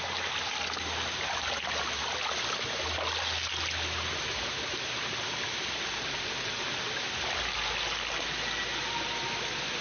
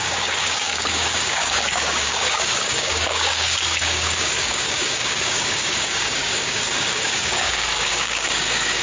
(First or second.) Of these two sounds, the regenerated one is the second